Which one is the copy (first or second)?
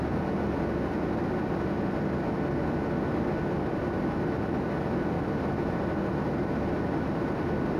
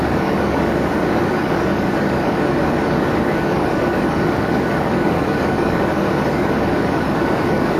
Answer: second